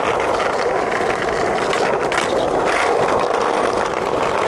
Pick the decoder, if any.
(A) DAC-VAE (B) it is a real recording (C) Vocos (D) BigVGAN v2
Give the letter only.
B